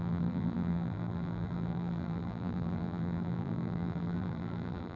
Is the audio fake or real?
fake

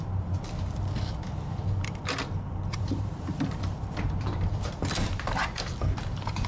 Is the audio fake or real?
fake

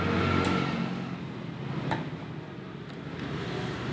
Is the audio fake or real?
real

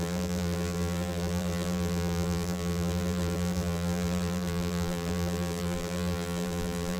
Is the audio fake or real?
fake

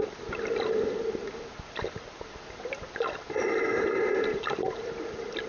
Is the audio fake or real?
real